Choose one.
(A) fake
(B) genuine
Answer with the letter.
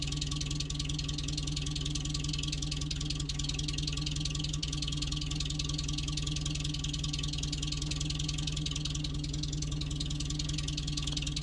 B